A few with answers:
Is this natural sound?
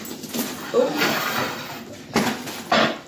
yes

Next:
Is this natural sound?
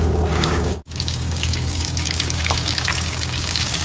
no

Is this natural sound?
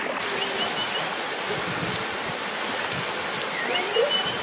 yes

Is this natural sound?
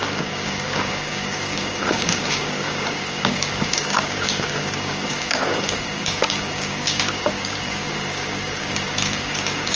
no